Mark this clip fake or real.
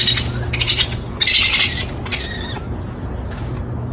real